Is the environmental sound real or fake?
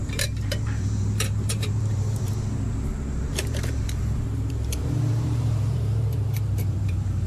fake